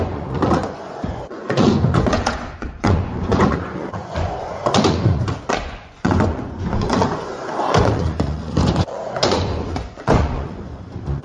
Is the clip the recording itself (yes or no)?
no